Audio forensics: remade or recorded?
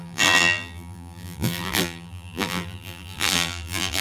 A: remade